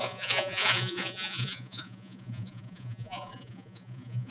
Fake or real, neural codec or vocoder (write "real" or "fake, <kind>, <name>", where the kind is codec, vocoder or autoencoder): fake, vocoder, Vocos